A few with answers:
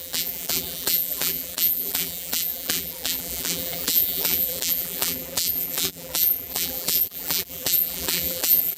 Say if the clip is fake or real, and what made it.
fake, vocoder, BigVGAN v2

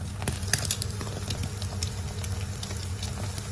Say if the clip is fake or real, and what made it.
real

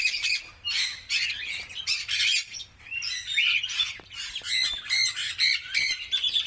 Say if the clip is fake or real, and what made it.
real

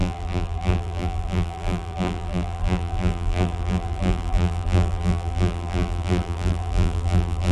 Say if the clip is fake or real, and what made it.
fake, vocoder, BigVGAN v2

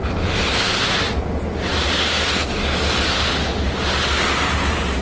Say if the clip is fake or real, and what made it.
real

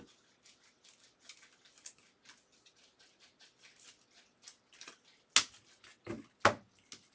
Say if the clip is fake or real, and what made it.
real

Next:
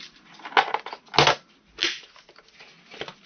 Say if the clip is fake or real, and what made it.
real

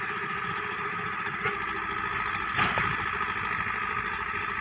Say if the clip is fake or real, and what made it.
real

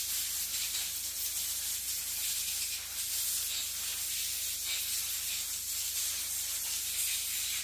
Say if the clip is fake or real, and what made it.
real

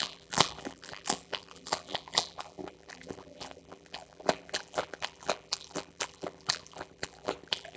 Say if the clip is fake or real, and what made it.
fake, vocoder, BigVGAN v2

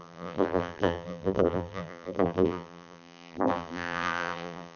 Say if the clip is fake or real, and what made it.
fake, vocoder, BigVGAN v2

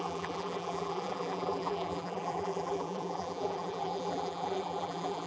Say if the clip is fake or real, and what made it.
fake, vocoder, BigVGAN v2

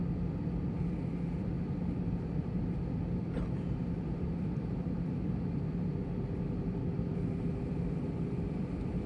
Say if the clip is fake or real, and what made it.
fake, vocoder, BigVGAN v2